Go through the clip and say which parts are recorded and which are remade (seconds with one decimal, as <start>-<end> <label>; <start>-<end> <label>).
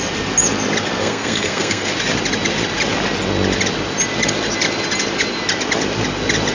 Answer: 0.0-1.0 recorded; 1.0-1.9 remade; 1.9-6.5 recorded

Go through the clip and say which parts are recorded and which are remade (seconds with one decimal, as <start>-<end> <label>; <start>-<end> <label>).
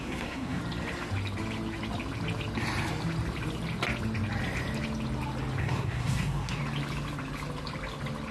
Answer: 0.0-0.6 remade; 0.6-5.6 recorded; 5.6-6.6 remade; 6.6-8.3 recorded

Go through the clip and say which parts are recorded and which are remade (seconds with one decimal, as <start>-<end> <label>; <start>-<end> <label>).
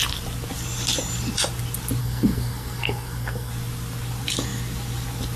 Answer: 0.0-2.0 recorded; 2.0-3.5 remade; 3.5-5.4 recorded